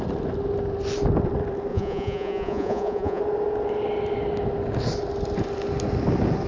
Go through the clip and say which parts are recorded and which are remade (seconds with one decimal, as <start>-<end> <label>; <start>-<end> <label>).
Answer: 0.0-1.7 recorded; 1.7-3.2 remade; 3.2-6.5 recorded